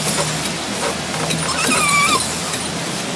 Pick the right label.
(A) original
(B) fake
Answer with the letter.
A